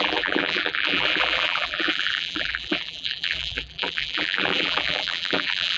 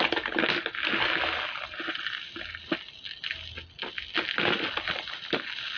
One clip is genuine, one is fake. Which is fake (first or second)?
first